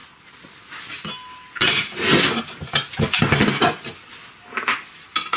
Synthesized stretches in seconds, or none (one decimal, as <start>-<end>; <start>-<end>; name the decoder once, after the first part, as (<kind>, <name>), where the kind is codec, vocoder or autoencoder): none